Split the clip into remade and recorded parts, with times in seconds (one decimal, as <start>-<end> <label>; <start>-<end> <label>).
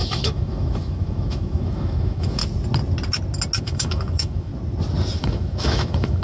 0.0-2.4 remade; 2.4-3.6 recorded; 3.6-4.5 remade; 4.5-5.2 recorded; 5.2-6.2 remade